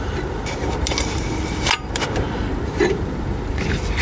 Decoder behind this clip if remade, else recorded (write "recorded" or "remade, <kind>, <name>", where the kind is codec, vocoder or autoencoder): remade, vocoder, BigVGAN v2